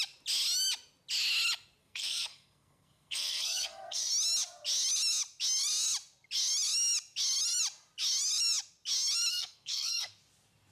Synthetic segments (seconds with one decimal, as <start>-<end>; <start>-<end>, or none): 1.8-4.1; 9.3-10.1